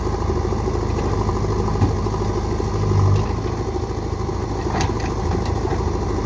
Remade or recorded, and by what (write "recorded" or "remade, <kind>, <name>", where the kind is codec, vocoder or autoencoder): recorded